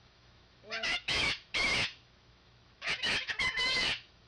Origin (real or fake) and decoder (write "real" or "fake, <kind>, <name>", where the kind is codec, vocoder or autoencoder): fake, autoencoder, DAC-VAE